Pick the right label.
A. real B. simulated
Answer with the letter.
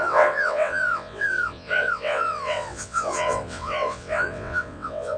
B